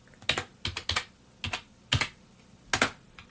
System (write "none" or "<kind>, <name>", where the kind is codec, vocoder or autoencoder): none